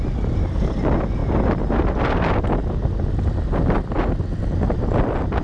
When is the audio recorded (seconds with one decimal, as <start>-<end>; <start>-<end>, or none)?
0.0-5.4